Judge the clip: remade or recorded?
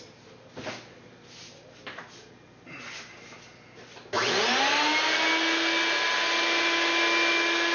recorded